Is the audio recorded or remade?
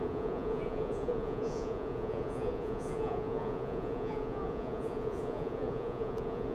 remade